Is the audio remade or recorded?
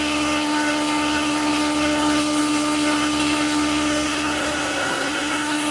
remade